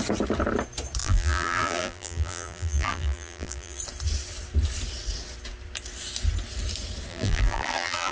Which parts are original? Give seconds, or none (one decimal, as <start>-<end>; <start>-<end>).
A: 0.0-1.0; 3.8-7.1